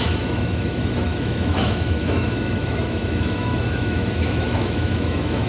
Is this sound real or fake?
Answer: fake